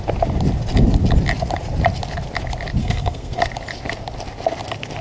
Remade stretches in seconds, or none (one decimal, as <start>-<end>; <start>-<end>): 2.8-3.4